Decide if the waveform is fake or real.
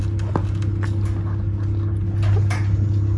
real